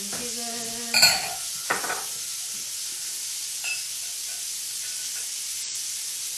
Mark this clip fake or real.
real